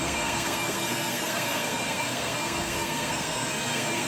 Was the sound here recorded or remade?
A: remade